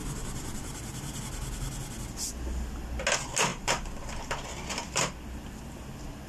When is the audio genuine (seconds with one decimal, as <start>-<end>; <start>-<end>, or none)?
1.2-3.5; 4.2-6.3